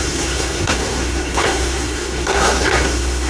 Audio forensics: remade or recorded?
remade